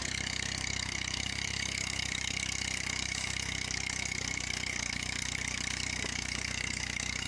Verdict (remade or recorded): remade